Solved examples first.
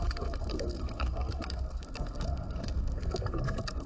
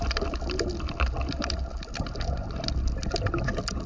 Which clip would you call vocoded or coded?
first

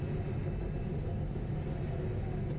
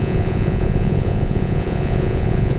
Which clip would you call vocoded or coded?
second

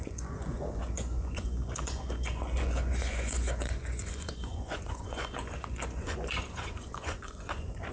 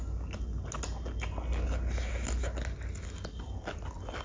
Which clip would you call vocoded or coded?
first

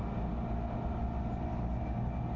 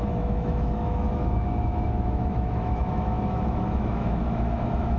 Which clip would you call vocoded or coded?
second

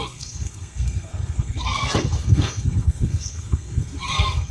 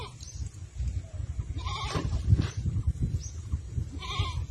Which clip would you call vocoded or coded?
first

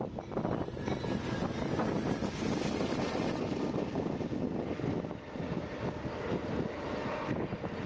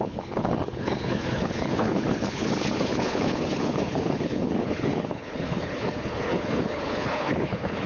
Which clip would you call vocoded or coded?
second